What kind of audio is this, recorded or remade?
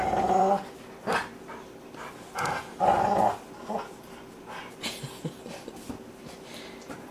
recorded